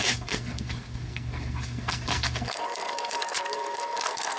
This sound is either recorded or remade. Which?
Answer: remade